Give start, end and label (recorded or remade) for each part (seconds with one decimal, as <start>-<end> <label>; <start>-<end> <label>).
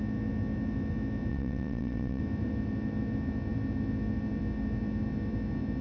0.0-1.3 recorded; 1.3-2.2 remade; 2.2-5.8 recorded